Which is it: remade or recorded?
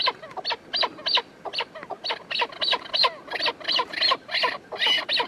recorded